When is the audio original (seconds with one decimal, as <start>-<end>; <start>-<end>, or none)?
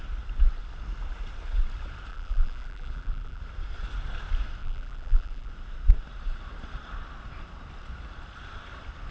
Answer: 0.0-2.1; 3.4-4.6; 5.5-9.1